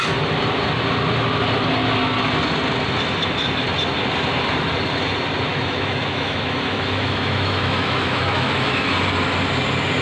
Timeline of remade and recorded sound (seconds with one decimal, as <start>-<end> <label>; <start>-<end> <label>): 0.0-5.5 recorded; 5.5-8.9 remade; 8.9-10.0 recorded